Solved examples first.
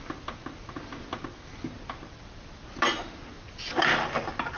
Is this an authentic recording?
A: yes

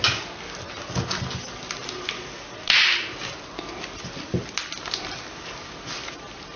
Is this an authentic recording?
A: yes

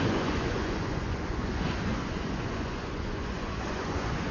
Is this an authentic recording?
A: no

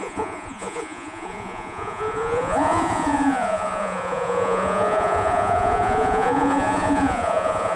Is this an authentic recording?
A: no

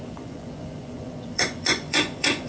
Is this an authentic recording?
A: no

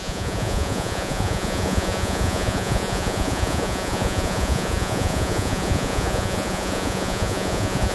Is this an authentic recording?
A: no